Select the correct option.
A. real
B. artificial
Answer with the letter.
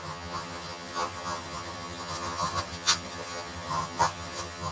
B